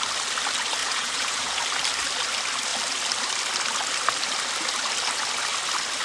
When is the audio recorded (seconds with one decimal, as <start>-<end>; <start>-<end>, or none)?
0.0-0.8; 1.6-6.0